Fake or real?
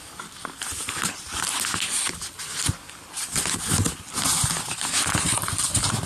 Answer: real